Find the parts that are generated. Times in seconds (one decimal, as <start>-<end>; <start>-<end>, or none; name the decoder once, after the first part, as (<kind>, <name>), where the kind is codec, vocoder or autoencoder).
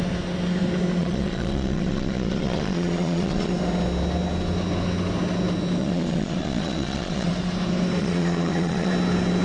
1.0-3.5 (vocoder, Vocos); 5.8-7.3; 8.0-8.9